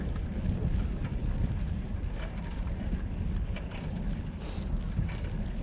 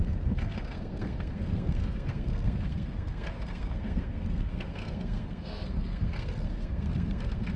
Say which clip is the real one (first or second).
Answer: first